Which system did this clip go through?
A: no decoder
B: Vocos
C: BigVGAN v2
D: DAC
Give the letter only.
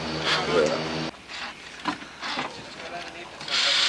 A